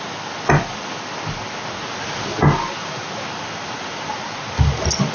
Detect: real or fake real